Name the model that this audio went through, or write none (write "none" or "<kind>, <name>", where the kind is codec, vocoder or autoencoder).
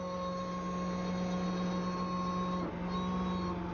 none